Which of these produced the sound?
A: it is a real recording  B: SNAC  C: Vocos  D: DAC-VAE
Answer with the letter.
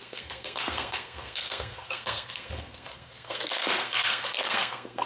B